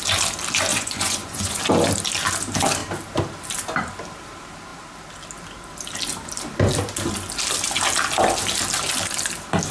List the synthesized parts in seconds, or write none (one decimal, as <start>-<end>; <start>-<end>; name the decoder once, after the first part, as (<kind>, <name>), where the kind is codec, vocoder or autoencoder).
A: 0.7-1.6 (vocoder, Vocos)